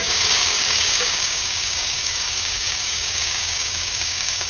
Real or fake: fake